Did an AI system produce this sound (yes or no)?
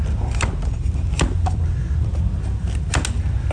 no